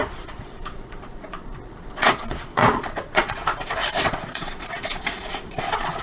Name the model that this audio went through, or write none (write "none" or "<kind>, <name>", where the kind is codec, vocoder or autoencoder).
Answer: vocoder, Vocos